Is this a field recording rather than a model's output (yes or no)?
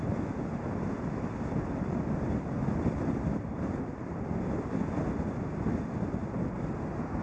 yes